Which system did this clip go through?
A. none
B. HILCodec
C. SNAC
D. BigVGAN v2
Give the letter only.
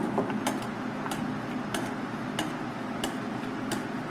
A